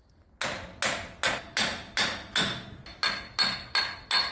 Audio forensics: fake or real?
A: real